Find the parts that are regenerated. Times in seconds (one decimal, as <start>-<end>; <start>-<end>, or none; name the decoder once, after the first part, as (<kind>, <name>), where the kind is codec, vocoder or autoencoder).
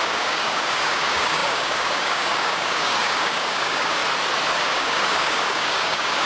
0.0-4.0 (codec, DAC); 4.6-6.3